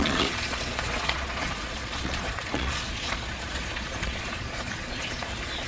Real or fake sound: fake